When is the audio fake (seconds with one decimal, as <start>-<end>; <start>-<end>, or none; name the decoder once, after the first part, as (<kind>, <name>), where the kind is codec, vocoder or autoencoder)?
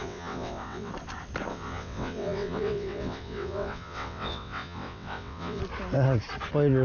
0.0-0.9 (vocoder, WaveNeXt); 1.5-5.6